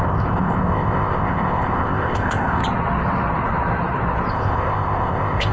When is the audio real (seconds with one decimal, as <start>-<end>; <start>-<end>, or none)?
2.6-4.3